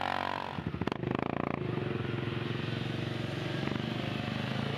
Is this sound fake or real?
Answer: real